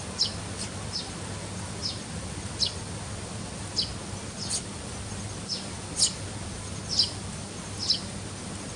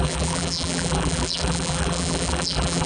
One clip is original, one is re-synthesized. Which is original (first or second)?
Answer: first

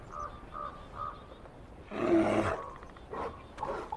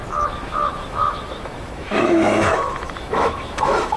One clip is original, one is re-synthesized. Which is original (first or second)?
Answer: first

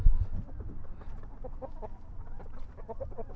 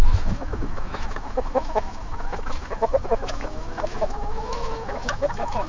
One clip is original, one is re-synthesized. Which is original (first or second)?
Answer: first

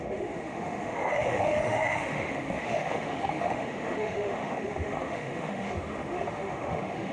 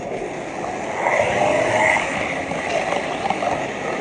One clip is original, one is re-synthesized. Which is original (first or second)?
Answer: second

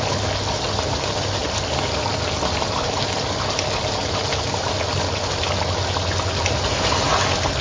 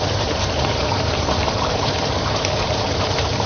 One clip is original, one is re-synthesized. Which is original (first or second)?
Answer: first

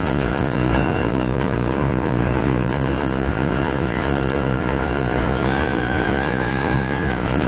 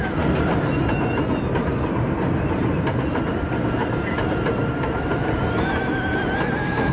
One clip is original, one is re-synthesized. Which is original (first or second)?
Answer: second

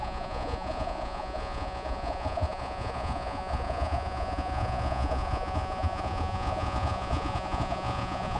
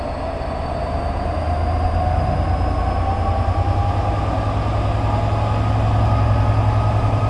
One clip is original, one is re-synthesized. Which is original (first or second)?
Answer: second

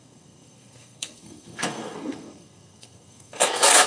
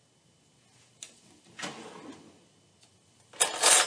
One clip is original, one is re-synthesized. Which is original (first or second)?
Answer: second